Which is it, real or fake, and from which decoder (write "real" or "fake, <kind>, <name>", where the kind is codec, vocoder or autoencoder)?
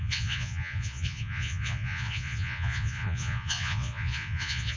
fake, vocoder, Vocos